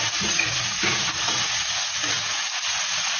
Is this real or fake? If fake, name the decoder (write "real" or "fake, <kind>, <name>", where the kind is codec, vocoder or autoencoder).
fake, vocoder, Vocos